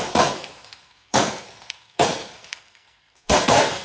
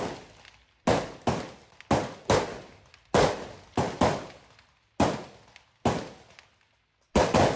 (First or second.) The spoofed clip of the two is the first